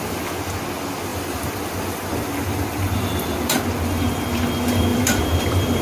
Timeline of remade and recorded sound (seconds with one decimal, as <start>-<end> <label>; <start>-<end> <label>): 0.0-1.1 recorded; 1.1-3.6 remade; 3.6-4.9 recorded; 4.9-5.8 remade